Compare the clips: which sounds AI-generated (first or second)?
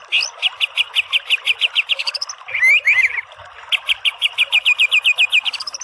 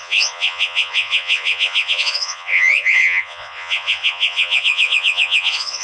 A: second